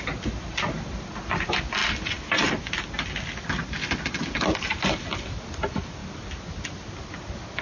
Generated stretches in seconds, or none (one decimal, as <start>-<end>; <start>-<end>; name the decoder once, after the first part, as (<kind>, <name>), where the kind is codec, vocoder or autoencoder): none